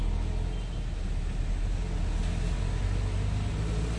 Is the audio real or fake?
real